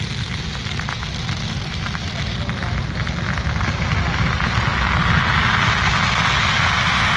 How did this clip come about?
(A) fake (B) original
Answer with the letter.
B